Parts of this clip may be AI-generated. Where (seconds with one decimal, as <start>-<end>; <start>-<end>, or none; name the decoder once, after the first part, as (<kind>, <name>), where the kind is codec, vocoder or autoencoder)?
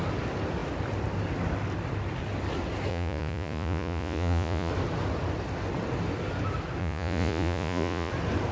2.9-4.7 (vocoder, Vocos); 6.8-8.1